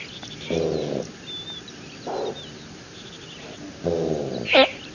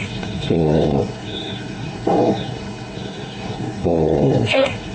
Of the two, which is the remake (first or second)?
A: second